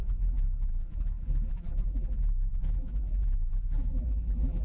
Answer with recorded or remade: remade